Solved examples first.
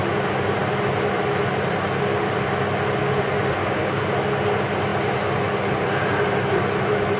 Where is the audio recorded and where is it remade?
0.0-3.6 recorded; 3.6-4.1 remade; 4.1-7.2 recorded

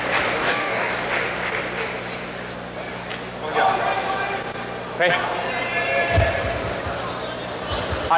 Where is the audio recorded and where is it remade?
0.0-0.4 recorded; 0.4-0.9 remade; 0.9-8.2 recorded